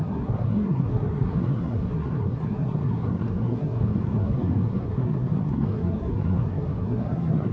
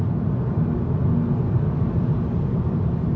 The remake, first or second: first